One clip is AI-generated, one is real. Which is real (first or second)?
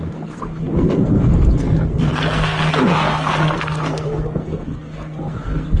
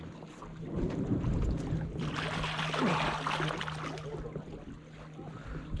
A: second